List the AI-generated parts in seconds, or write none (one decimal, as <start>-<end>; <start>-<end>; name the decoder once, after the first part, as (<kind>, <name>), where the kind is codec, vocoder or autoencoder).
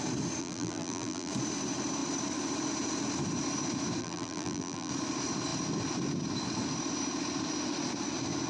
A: 0.4-1.3 (vocoder, BigVGAN v2); 4.0-4.9